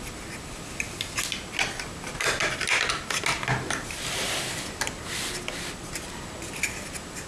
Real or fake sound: real